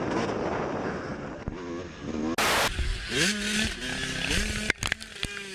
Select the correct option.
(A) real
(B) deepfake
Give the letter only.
A